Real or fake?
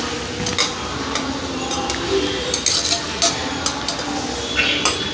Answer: real